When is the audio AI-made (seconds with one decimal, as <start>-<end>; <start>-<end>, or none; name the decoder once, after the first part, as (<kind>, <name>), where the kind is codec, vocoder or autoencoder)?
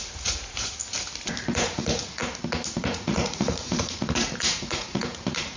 0.0-0.8 (vocoder, Vocos); 1.5-2.2; 2.8-5.6